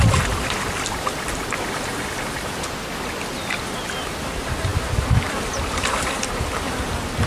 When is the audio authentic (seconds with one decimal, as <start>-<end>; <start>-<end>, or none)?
0.0-7.3